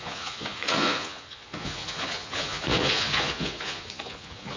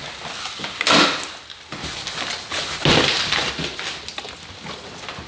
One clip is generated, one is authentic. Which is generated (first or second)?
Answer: first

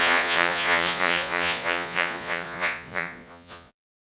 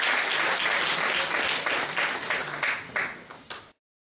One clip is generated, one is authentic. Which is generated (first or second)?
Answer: first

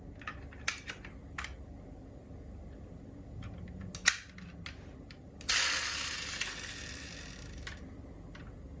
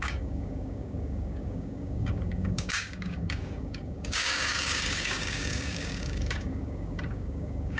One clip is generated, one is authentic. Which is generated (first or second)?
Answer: second